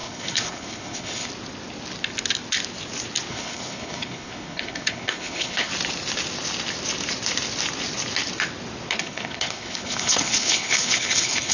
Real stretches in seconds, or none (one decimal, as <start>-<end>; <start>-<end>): 1.3-3.3; 5.7-8.9